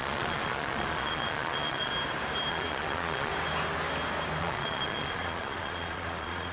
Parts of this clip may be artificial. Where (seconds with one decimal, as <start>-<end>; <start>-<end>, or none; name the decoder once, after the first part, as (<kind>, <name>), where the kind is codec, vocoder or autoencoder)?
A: 0.0-1.9 (vocoder, Vocos); 2.5-3.3; 4.4-6.5